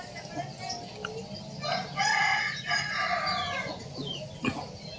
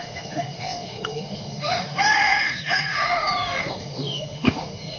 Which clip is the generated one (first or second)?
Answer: second